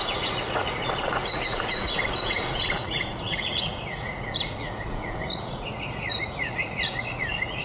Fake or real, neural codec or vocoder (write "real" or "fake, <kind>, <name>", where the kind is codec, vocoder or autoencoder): fake, vocoder, Vocos